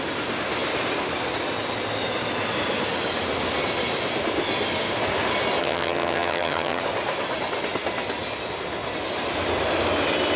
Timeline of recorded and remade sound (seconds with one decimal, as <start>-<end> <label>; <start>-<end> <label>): 0.0-5.6 recorded; 5.6-6.8 remade; 6.8-10.4 recorded